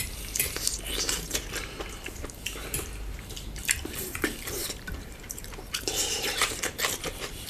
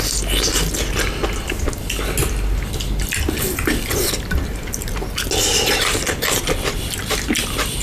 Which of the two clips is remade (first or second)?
first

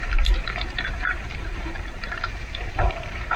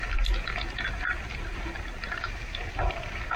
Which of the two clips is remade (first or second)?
first